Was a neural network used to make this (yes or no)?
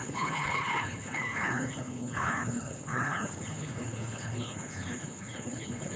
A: yes